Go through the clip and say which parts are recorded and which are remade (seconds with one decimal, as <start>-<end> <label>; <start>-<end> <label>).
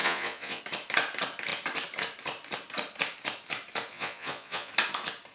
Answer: 0.0-0.6 remade; 0.6-3.9 recorded; 3.9-4.7 remade; 4.7-5.3 recorded